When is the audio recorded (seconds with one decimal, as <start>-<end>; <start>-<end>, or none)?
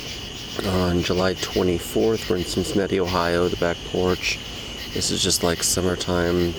0.0-1.2; 5.9-6.6